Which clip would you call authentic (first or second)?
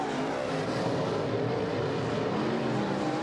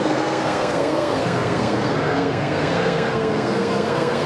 first